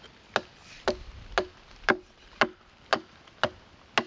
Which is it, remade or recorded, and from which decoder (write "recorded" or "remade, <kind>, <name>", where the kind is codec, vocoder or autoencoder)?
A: recorded